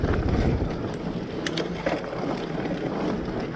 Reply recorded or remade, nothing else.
recorded